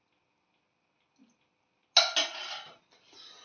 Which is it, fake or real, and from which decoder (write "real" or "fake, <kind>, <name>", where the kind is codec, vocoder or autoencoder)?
real